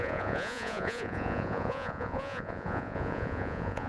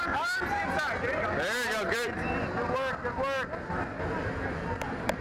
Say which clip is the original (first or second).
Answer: second